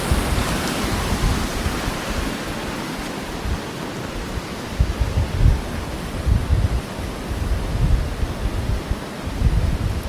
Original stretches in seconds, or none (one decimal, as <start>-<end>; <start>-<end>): 0.0-10.1